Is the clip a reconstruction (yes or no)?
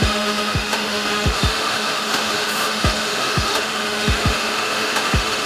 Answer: yes